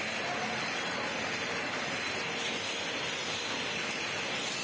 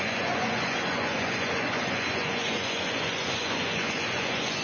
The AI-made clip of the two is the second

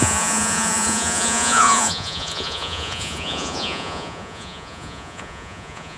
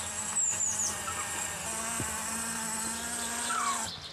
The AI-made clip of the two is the first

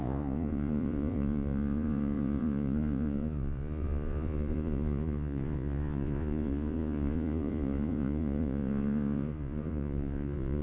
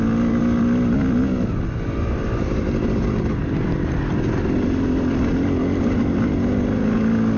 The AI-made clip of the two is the first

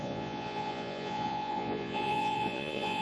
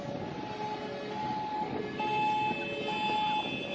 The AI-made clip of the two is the first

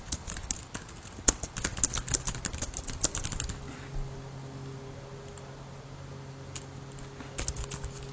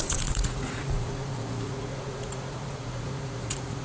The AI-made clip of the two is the second